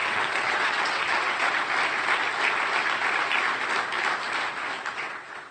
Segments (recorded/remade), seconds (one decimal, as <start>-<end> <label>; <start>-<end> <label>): 0.0-1.7 remade; 1.7-5.0 recorded; 5.0-5.5 remade